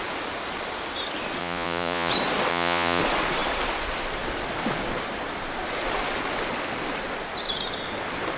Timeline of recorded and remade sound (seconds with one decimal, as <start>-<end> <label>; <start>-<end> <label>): 0.0-1.4 recorded; 1.4-2.1 remade; 2.1-2.5 recorded; 2.5-3.0 remade; 3.0-8.4 recorded